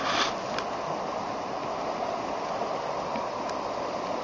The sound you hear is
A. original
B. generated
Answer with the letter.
A